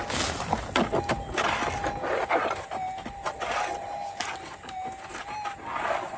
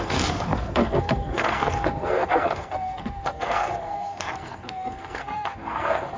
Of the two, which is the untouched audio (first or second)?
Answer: first